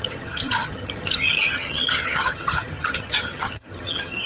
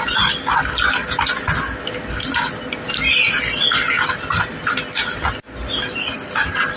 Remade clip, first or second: first